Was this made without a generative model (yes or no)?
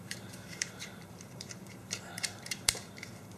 no